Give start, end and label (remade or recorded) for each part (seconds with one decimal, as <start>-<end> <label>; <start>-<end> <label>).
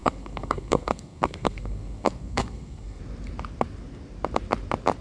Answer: 0.0-3.0 remade; 3.0-5.0 recorded